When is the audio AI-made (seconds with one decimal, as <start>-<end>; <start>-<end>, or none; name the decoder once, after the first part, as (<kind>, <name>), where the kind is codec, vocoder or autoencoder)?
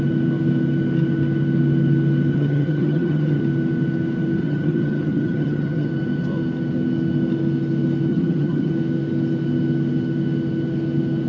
2.3-3.4 (vocoder, HiFi-GAN); 4.4-5.9; 8.1-8.7